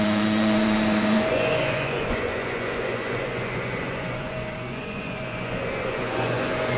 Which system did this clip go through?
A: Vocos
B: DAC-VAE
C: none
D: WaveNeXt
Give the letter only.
A